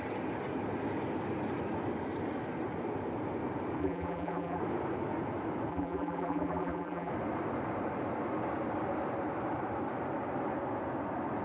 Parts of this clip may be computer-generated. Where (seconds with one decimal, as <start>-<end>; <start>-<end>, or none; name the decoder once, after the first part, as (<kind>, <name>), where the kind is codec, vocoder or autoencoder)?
3.8-4.6 (vocoder, BigVGAN v2); 5.7-7.1